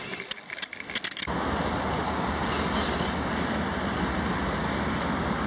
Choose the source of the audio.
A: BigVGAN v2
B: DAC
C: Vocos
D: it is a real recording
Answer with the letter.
D